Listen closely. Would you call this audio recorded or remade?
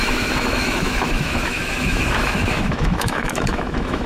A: remade